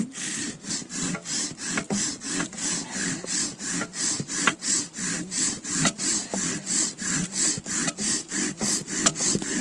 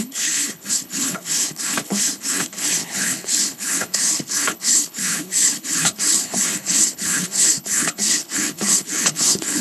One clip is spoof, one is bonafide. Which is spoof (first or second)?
second